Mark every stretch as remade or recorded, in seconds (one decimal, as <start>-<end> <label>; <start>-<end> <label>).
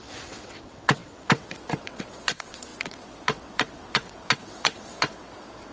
0.0-5.7 remade